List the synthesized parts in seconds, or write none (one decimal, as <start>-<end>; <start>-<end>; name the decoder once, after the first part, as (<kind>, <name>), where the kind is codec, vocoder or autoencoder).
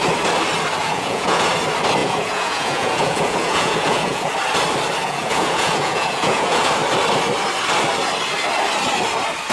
0.8-1.5 (vocoder, Vocos); 2.0-4.3; 5.0-6.7